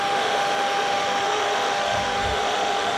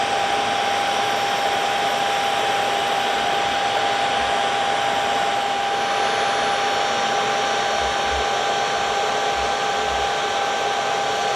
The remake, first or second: first